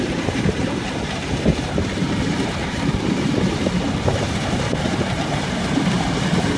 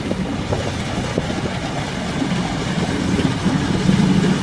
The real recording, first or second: second